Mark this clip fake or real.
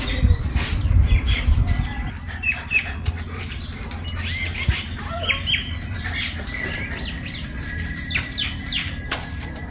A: fake